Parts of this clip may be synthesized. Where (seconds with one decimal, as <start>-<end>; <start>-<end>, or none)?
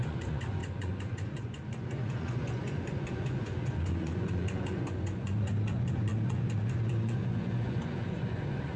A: 0.0-8.8